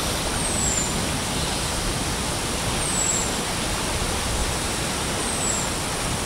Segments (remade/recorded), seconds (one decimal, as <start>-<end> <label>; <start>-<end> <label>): 0.0-1.2 recorded; 1.2-1.8 remade; 1.8-4.4 recorded; 4.4-5.6 remade; 5.6-6.3 recorded